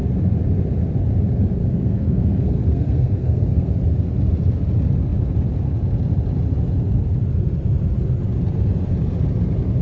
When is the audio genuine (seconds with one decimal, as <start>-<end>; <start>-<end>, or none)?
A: 0.0-1.6; 3.7-9.8